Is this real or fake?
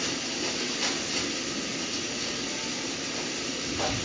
real